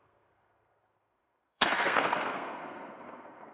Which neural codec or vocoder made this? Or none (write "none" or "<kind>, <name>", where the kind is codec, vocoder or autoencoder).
codec, SNAC